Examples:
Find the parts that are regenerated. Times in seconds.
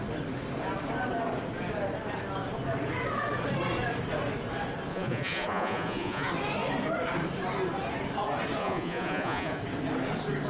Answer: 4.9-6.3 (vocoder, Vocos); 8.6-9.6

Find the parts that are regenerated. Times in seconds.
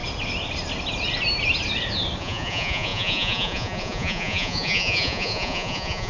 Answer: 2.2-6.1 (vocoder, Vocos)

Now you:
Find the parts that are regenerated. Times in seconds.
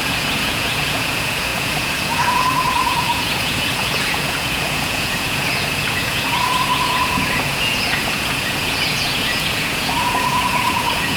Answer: 0.0-11.2 (vocoder, Vocos)